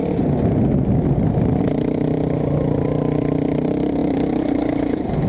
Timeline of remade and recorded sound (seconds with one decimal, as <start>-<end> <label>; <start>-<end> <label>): 0.0-5.3 recorded